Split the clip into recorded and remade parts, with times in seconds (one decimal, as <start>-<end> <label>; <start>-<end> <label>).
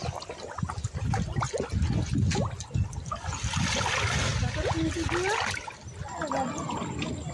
0.0-7.3 recorded